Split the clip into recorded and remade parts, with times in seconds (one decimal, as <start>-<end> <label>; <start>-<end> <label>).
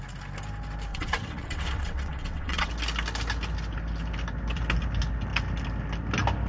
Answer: 0.0-0.9 recorded; 0.9-2.7 remade; 2.7-6.5 recorded